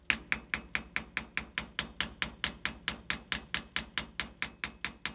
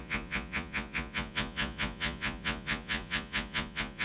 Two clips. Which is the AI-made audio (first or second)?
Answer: second